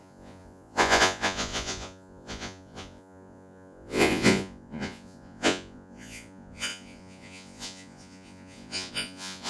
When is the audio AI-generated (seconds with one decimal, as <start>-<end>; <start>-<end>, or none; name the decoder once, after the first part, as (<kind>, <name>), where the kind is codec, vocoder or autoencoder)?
0.0-9.5 (vocoder, Vocos)